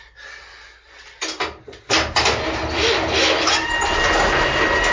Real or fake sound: real